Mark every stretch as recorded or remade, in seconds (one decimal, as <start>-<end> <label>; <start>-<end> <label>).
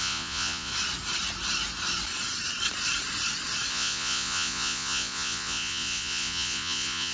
0.0-0.7 remade; 0.7-3.7 recorded; 3.7-7.1 remade